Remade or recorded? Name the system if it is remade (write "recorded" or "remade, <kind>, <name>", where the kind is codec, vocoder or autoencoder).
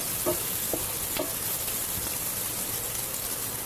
recorded